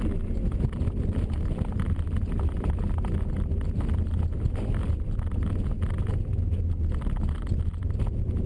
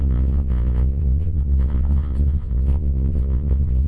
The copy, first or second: second